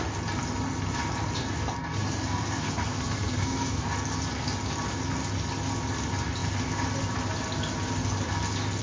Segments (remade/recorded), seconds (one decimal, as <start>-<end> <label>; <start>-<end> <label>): 0.0-2.0 recorded; 2.0-3.9 remade; 3.9-8.8 recorded